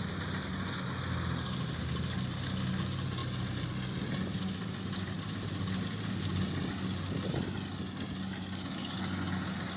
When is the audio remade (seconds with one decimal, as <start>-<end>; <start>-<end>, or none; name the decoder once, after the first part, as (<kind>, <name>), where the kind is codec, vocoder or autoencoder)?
none